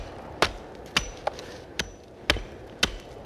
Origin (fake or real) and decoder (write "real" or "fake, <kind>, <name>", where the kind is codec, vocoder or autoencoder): real